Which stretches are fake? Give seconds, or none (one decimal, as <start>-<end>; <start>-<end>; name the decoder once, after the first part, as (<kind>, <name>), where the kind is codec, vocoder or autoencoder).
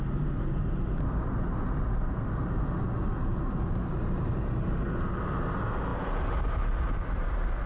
none